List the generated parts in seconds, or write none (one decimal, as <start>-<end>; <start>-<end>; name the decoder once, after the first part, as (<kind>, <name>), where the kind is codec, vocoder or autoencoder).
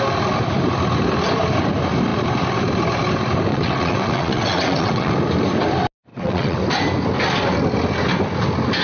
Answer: 3.5-5.1 (vocoder, WaveNeXt); 6.1-6.6